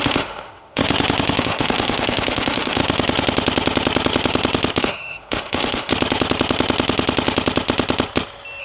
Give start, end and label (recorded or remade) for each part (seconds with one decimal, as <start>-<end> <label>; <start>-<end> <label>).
0.0-0.8 remade; 0.8-1.4 recorded; 1.4-2.8 remade; 2.8-4.8 recorded; 4.8-5.9 remade; 5.9-8.6 recorded